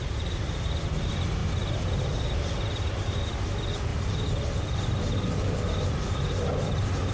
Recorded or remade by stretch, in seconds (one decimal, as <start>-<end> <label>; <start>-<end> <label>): 0.0-7.1 recorded

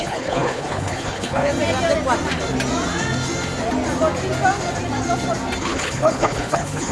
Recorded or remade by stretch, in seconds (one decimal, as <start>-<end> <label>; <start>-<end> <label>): 0.0-1.5 remade; 1.5-5.6 recorded; 5.6-6.9 remade

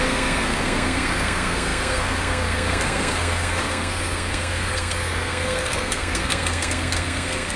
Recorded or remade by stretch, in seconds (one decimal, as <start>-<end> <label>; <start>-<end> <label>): 0.0-7.6 remade

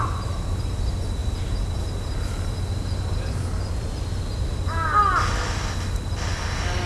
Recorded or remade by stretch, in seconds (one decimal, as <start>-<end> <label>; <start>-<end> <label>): 0.0-6.9 recorded